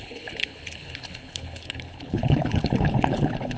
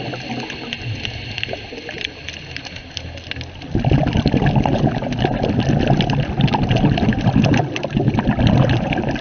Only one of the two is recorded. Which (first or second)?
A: second